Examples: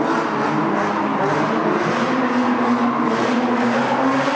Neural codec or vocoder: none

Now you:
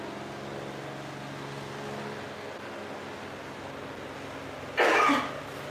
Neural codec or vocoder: none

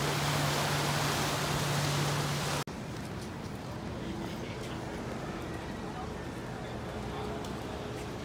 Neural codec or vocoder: none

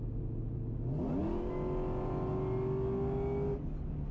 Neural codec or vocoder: none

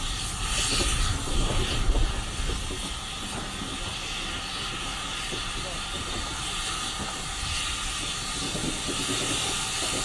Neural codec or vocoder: none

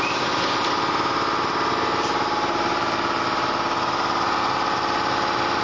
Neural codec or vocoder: none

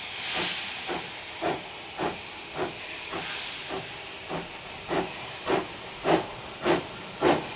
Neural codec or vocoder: none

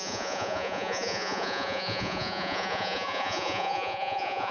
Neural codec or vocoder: vocoder, Vocos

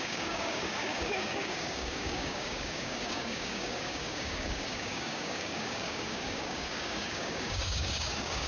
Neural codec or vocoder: codec, DAC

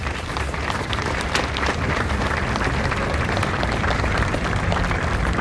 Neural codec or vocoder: vocoder, BigVGAN v2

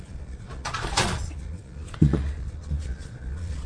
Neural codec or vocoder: vocoder, Vocos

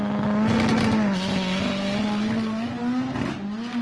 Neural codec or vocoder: none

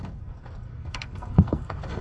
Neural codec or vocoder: codec, SNAC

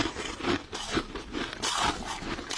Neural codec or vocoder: none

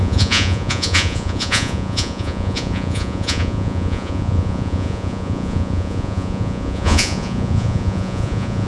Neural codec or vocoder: vocoder, Vocos